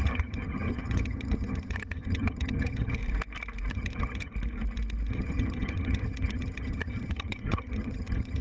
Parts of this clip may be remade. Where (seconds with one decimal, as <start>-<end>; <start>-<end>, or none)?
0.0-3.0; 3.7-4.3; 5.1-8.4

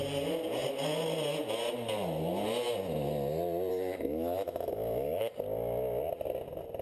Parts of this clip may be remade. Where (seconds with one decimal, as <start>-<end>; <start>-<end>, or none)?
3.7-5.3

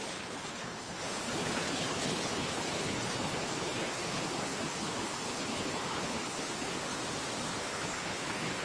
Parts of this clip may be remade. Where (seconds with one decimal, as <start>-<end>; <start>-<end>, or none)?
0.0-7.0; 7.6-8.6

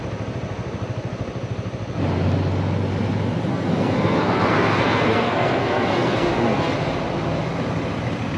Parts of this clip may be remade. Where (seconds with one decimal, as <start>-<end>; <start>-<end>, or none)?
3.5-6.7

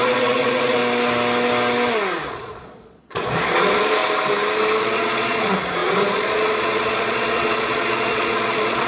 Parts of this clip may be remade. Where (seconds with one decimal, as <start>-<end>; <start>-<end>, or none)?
0.0-0.8; 2.3-4.0; 4.8-8.9

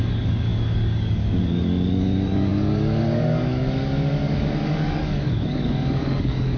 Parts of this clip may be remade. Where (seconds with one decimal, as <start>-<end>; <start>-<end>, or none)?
0.0-6.6